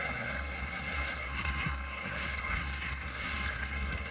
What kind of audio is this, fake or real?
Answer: fake